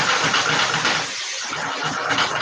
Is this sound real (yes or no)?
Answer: yes